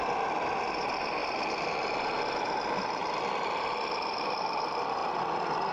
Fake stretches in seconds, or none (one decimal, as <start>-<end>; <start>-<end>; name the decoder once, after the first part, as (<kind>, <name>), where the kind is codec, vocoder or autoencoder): none